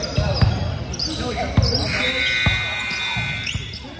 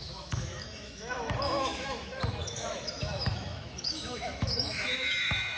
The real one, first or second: first